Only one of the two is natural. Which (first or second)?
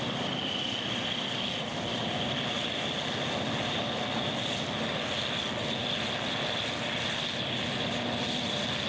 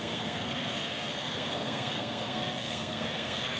first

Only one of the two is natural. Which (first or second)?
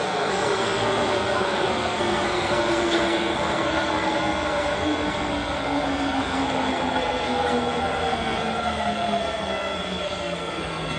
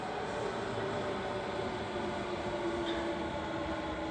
second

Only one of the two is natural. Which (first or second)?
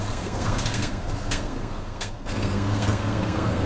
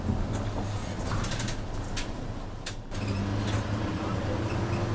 second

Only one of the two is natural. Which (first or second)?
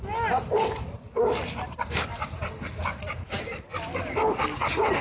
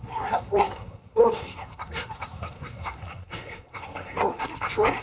first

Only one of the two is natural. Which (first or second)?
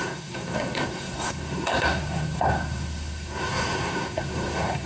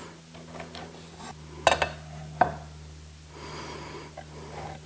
second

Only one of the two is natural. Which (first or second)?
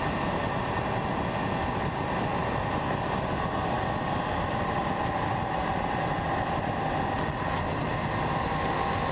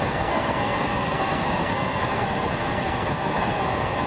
first